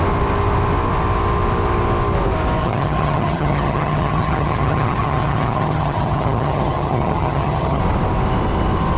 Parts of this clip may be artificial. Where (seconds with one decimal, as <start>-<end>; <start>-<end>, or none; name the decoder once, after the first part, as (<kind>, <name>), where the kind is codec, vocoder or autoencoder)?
2.6-7.8 (vocoder, HiFi-GAN)